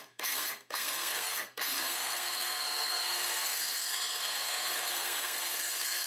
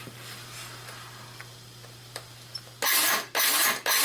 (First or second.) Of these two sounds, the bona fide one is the second